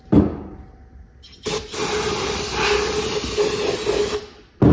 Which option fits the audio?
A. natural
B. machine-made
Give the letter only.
A